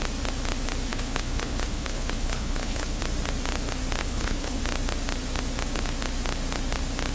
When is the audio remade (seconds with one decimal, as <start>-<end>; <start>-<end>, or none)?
0.9-3.0; 4.0-4.6

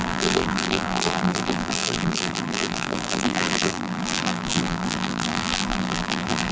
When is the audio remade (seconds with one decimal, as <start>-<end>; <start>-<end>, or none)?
0.0-6.5